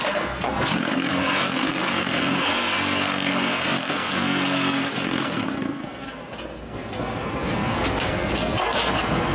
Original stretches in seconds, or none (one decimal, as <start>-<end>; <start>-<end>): none